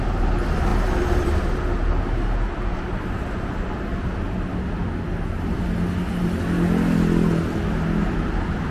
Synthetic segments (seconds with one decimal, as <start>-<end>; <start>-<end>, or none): none